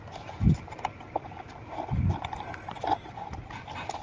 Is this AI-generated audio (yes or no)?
no